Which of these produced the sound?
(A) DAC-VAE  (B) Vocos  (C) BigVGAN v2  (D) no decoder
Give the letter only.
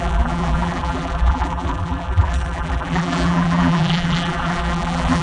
C